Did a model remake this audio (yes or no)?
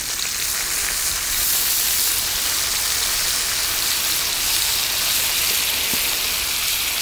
no